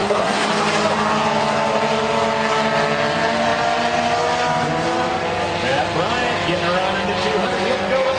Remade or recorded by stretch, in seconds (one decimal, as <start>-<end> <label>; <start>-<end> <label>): 0.0-0.5 remade; 0.5-8.2 recorded